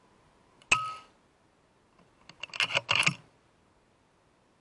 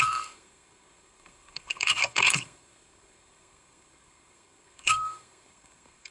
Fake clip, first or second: second